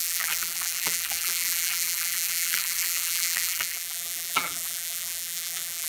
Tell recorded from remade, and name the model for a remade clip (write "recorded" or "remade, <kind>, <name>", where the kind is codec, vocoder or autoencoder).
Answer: remade, vocoder, BigVGAN v2